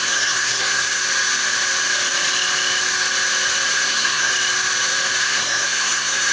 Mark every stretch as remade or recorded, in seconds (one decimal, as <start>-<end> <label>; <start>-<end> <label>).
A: 0.0-1.0 remade; 1.0-3.7 recorded; 3.7-4.3 remade; 4.3-5.2 recorded; 5.2-6.3 remade